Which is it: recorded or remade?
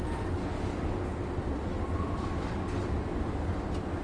recorded